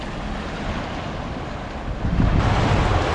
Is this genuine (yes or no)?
yes